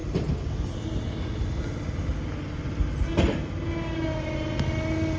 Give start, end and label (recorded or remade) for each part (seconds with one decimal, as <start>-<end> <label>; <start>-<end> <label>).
0.0-5.2 recorded